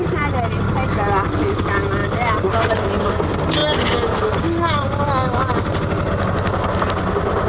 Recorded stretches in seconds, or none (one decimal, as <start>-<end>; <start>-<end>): 0.0-7.5